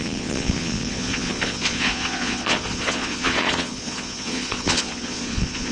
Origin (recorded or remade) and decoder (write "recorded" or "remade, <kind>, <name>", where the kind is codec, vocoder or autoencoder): remade, vocoder, Vocos